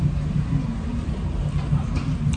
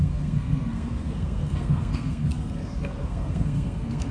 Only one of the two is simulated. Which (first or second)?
second